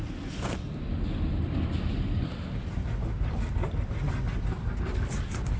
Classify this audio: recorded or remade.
recorded